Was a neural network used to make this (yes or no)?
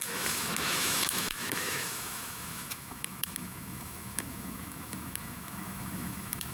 yes